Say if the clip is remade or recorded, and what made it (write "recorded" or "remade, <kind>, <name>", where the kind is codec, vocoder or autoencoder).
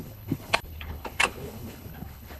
remade, codec, HILCodec